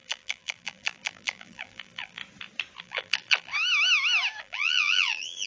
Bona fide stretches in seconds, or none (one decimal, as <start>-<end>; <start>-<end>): 2.2-2.8; 3.5-4.4

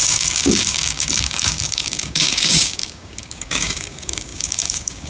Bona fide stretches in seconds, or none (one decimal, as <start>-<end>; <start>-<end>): none